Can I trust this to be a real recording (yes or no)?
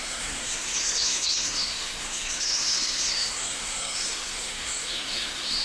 no